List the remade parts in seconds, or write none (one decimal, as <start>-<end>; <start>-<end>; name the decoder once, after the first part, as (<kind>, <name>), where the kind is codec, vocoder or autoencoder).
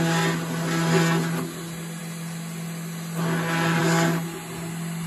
none